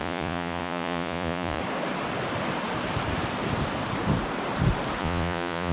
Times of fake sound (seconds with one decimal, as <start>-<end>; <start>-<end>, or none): 0.0-1.6; 5.0-5.7